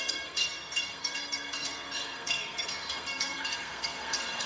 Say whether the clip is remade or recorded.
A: remade